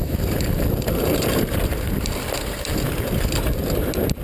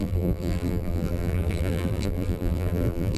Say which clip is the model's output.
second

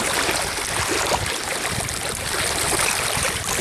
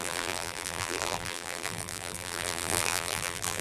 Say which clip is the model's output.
second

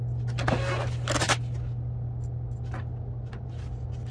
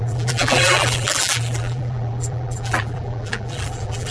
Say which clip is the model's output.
second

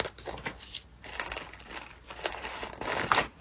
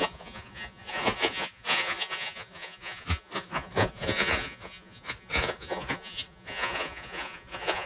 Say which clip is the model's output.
second